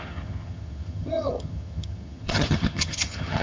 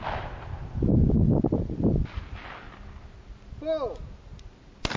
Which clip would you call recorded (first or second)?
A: second